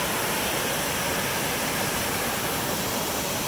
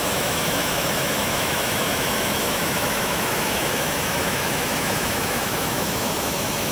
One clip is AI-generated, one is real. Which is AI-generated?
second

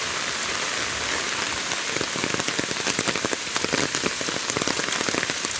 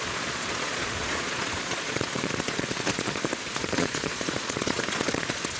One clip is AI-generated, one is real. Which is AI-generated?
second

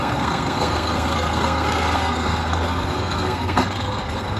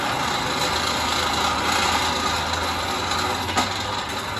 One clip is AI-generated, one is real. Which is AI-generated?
first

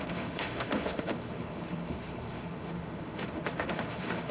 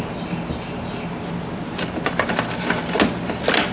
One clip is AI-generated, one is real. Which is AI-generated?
first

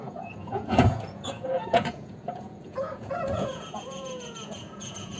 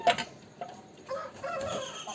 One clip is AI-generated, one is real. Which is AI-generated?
first